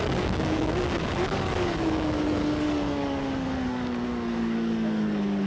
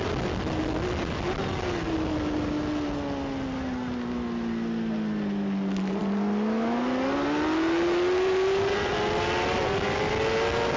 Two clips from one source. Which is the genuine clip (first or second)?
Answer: second